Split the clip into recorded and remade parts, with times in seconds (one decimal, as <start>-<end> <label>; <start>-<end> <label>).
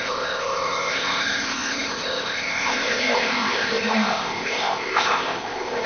0.0-5.9 remade